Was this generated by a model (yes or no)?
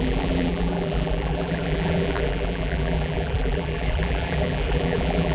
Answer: yes